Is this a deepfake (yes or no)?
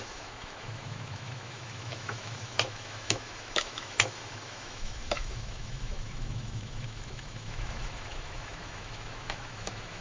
yes